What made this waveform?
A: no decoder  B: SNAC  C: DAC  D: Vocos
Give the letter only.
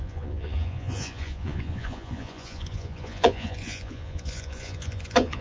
D